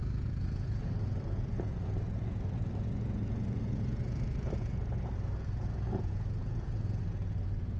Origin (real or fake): fake